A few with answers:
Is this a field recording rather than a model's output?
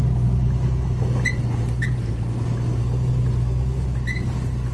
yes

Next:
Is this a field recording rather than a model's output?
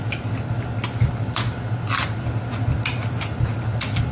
yes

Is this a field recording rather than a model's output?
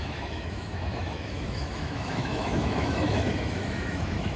no